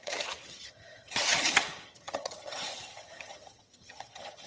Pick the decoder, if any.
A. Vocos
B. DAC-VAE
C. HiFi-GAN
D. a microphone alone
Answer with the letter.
C